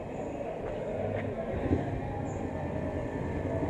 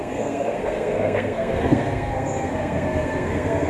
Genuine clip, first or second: first